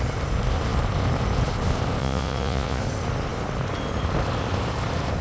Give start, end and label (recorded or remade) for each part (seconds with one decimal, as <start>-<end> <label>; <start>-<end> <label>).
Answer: 0.0-2.0 recorded; 2.0-2.8 remade; 2.8-5.2 recorded